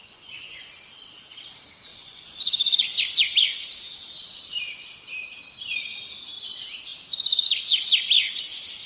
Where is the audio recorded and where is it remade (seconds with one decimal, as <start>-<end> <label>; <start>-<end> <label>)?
0.0-0.7 remade; 0.7-1.9 recorded; 1.9-3.0 remade; 3.0-8.9 recorded

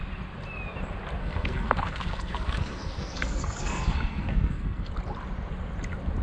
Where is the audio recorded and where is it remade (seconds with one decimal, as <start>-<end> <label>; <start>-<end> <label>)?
0.0-1.2 recorded; 1.2-4.9 remade; 4.9-6.2 recorded

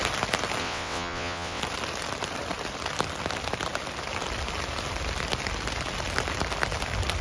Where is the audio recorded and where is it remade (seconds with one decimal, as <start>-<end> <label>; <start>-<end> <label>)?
0.0-0.6 recorded; 0.6-1.6 remade; 1.6-7.2 recorded

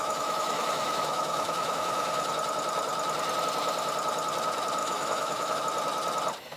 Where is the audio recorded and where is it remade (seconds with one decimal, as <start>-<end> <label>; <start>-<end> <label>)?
0.0-2.3 remade; 2.3-4.8 recorded; 4.8-5.6 remade; 5.6-6.6 recorded

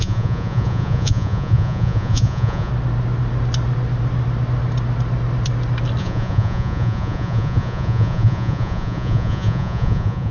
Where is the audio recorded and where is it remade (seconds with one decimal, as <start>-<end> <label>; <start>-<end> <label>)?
0.0-2.7 remade; 2.7-6.0 recorded; 6.0-10.3 remade

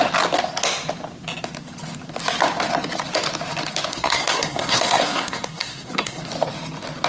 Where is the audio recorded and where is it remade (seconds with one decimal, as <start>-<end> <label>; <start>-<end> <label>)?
0.0-3.9 recorded; 3.9-6.2 remade; 6.2-7.1 recorded